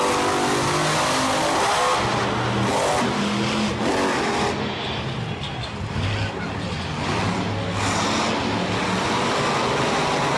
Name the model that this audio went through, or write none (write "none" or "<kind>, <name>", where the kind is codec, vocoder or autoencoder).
none